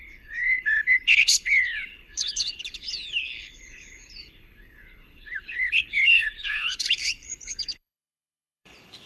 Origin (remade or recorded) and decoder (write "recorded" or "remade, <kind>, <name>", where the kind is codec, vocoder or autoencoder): remade, codec, HILCodec